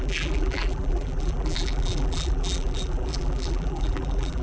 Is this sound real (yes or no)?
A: no